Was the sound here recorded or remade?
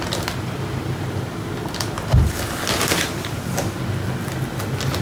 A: recorded